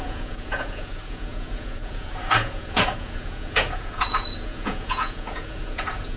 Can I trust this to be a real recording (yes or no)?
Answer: no